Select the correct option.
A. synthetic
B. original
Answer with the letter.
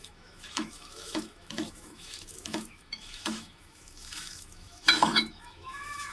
A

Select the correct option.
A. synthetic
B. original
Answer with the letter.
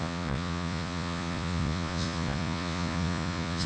A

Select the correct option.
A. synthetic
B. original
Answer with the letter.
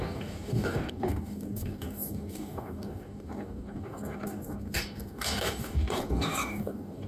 A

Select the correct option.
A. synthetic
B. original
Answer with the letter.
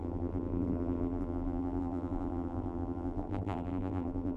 A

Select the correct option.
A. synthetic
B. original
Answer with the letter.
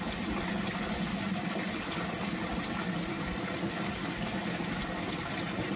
B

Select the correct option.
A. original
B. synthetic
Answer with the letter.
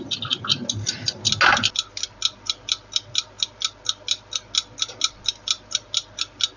A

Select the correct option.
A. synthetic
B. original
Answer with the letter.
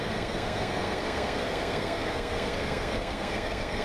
A